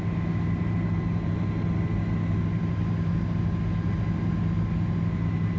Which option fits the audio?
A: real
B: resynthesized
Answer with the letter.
A